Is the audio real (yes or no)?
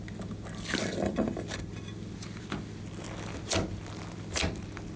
yes